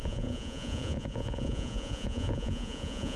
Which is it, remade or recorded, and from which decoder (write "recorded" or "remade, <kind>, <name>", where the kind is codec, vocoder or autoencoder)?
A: remade, vocoder, Vocos